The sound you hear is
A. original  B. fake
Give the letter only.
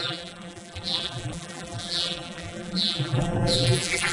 B